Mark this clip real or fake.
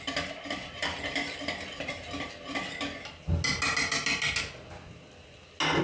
real